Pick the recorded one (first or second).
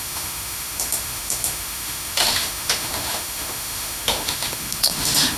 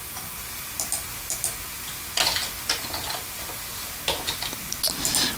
second